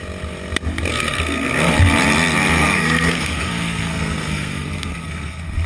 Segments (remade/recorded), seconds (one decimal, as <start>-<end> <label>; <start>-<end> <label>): 0.0-0.9 recorded; 0.9-1.7 remade; 1.7-2.6 recorded; 2.6-5.7 remade